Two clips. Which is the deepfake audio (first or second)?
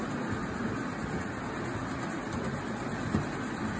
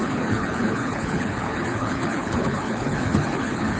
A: second